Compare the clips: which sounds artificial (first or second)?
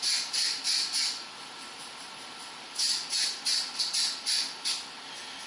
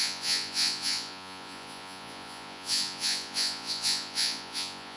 second